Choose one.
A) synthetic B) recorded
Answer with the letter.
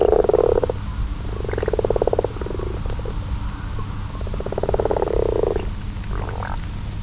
B